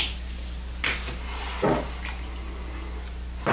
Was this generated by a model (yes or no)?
no